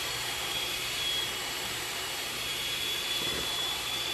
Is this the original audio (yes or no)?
no